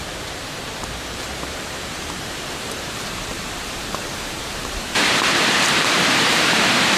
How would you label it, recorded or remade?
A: remade